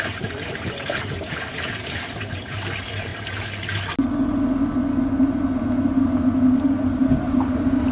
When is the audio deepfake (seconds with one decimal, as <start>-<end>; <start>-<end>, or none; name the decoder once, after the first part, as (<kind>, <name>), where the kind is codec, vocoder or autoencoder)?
0.0-3.1 (vocoder, BigVGAN v2); 6.9-7.9